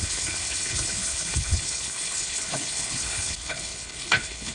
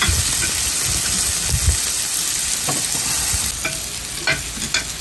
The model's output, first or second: first